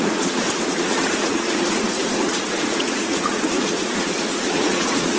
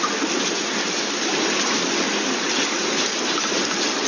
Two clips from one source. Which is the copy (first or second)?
first